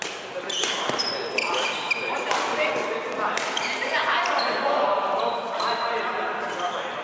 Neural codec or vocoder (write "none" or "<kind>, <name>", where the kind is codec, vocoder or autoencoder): none